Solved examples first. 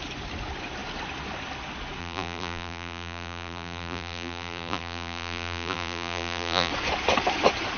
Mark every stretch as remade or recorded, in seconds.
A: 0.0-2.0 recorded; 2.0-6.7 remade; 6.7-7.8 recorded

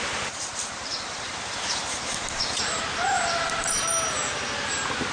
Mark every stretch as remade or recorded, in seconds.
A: 0.0-0.5 recorded; 0.5-2.8 remade; 2.8-5.1 recorded

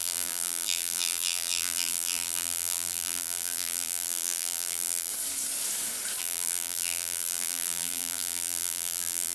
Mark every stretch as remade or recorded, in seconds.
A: 0.0-5.1 remade; 5.1-6.2 recorded; 6.2-9.3 remade

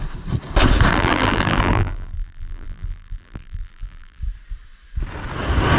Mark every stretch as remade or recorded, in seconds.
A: 0.0-0.9 recorded; 0.9-4.2 remade; 4.2-5.8 recorded

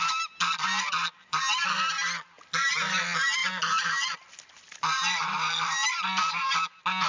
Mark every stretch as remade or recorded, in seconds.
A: 0.0-3.4 recorded; 3.4-6.3 remade; 6.3-7.1 recorded